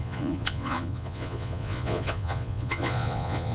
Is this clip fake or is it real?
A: fake